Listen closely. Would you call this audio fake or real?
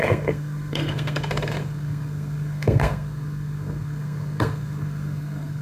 fake